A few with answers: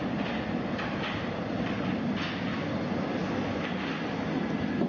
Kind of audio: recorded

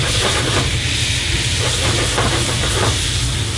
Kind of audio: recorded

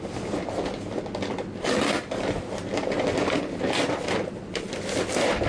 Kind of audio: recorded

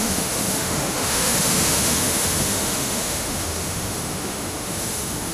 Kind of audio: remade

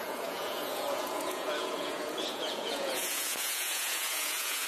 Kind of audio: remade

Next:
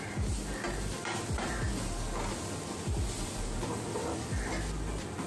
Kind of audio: recorded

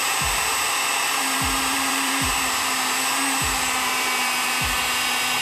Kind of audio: remade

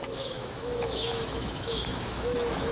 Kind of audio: remade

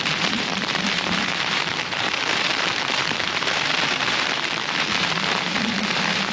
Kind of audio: remade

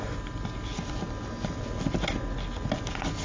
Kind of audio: recorded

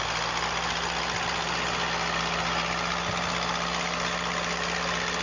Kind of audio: recorded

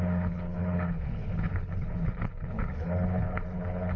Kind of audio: remade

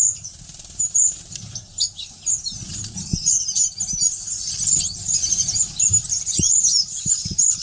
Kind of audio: remade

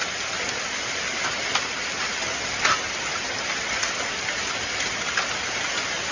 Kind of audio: recorded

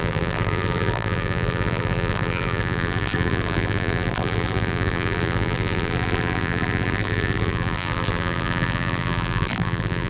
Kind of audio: remade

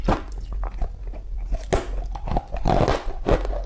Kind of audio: recorded